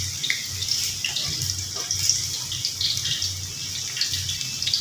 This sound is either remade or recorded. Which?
recorded